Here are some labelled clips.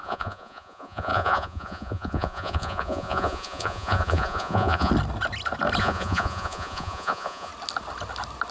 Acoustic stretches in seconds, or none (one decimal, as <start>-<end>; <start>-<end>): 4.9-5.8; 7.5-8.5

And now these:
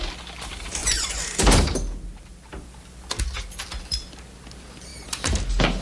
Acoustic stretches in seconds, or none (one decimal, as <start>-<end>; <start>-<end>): 0.0-0.8; 1.4-5.8

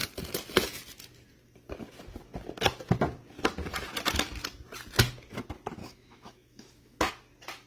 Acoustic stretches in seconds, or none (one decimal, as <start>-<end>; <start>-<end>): 0.0-5.8; 7.1-7.7

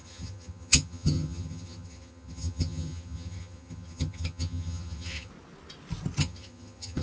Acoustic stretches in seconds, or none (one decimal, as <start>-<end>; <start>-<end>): 5.3-6.2